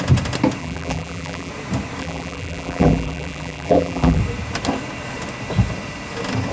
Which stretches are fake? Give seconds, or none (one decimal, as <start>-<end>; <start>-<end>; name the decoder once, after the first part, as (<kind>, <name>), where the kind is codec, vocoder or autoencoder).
0.6-1.5 (vocoder, BigVGAN v2); 2.0-4.2